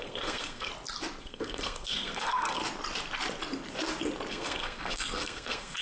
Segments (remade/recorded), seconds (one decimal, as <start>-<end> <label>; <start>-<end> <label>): 0.0-0.7 remade; 0.7-1.2 recorded; 1.2-2.6 remade; 2.6-4.3 recorded; 4.3-5.8 remade